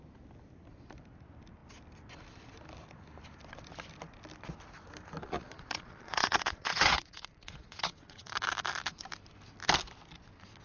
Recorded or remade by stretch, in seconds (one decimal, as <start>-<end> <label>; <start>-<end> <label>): 0.0-5.2 recorded; 5.2-8.3 remade; 8.3-10.6 recorded